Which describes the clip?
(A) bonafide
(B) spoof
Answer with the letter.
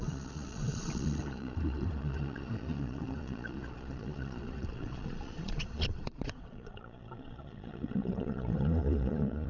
B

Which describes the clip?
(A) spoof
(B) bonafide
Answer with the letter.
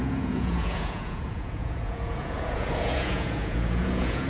A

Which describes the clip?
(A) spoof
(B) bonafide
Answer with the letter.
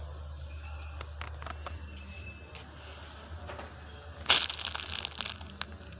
B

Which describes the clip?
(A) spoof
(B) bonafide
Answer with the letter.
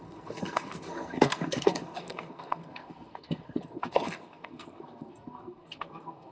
A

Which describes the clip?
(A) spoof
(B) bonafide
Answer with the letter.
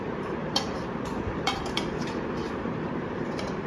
A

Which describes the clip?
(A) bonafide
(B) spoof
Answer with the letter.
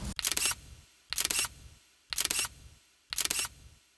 A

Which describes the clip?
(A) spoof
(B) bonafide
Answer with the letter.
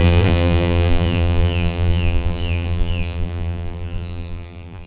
A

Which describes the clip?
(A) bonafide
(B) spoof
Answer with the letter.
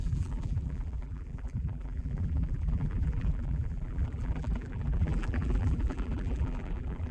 B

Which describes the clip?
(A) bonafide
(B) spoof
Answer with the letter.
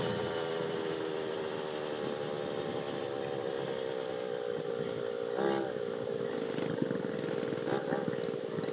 A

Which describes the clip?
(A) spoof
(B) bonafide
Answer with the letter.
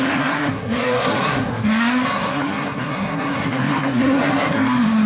A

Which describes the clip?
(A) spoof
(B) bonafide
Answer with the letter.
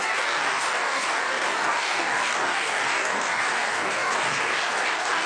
A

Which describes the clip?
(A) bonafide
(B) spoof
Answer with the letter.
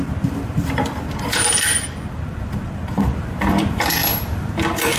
B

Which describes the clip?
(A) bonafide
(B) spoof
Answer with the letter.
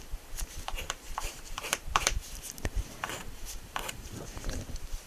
B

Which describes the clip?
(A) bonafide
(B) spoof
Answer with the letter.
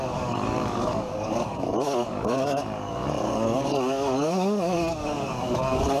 B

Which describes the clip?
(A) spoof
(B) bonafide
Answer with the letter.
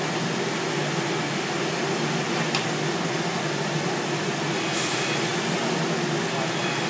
B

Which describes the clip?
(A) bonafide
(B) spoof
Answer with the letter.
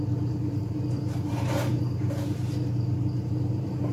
B